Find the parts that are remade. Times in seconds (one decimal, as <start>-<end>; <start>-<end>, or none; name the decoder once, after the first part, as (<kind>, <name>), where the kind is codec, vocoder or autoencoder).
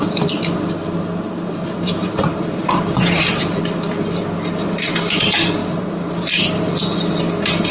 0.8-3.6 (vocoder, BigVGAN v2); 5.6-6.5